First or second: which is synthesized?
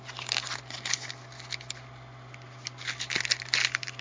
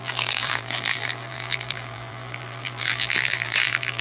second